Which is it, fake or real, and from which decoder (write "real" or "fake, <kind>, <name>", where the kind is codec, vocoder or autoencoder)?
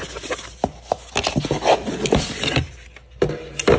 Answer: real